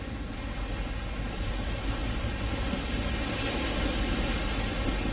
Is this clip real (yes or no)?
yes